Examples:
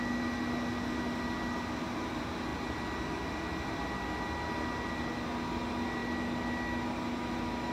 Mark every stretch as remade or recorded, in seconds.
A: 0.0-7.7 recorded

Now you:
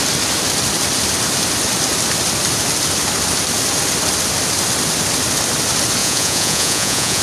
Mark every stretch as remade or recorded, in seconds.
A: 0.0-6.0 recorded; 6.0-7.2 remade